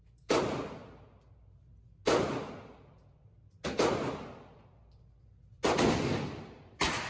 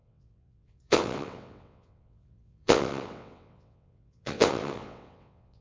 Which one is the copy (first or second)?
second